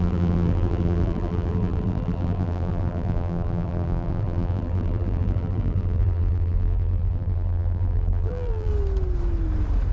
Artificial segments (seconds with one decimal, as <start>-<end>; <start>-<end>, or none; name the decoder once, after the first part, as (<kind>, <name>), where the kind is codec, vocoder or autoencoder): 0.0-8.7 (vocoder, BigVGAN v2)